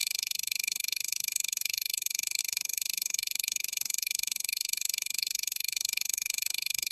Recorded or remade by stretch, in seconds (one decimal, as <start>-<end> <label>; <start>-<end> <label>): 0.0-6.9 remade